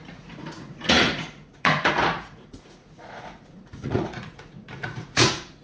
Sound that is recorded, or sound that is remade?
remade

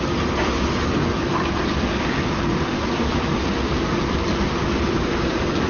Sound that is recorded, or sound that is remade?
recorded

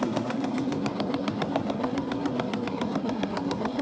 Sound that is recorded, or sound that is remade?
remade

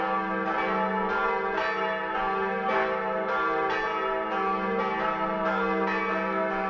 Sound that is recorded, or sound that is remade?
recorded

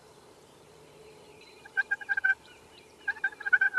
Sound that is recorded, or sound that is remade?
remade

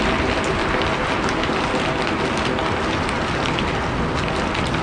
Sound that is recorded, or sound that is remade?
recorded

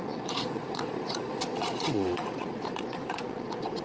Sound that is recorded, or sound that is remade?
remade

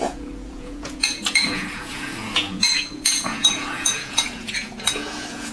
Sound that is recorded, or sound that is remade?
remade